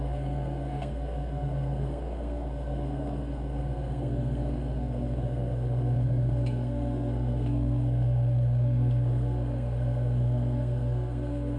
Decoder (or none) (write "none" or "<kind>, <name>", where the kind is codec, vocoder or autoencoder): codec, SNAC